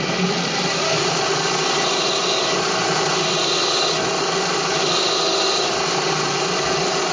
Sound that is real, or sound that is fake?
real